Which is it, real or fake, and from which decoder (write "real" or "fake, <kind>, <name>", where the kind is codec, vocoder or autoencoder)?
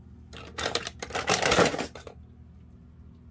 real